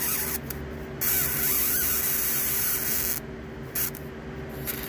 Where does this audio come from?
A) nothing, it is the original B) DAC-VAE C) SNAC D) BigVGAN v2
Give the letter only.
A